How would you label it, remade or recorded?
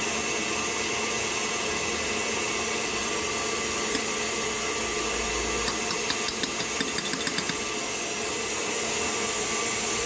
recorded